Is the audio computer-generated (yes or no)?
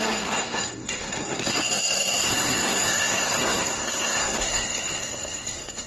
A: yes